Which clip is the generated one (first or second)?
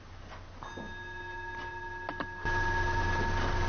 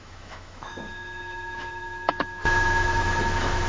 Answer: second